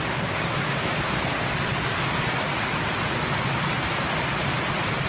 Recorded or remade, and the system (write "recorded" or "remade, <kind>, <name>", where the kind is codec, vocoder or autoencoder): recorded